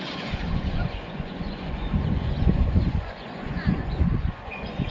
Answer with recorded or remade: remade